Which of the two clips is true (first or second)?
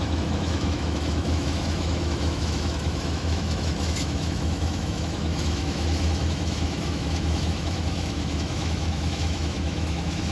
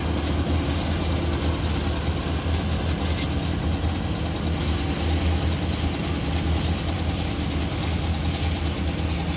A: second